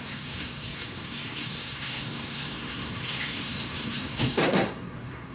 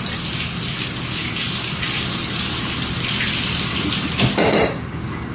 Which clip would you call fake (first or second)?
first